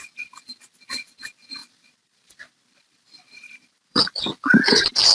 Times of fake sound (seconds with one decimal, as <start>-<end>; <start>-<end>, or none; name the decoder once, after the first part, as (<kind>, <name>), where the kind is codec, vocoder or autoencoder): 1.6-4.2 (vocoder, BigVGAN v2)